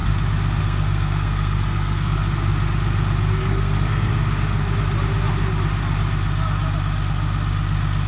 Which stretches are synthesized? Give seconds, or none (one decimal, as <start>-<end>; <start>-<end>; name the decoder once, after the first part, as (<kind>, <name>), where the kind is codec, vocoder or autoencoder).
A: 0.6-2.2 (codec, SNAC); 3.3-4.1